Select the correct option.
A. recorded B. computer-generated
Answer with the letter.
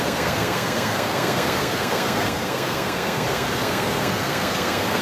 B